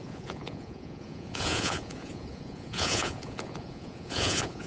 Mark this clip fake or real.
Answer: fake